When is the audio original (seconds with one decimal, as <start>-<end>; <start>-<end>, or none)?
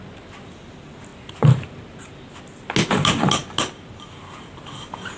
0.0-5.2